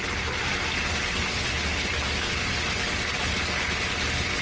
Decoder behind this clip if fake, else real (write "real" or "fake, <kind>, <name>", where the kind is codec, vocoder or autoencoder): real